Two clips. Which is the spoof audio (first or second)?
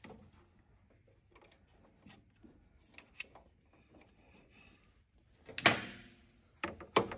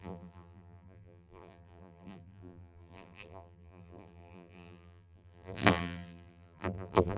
second